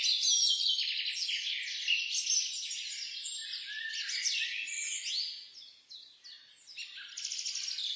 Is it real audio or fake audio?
real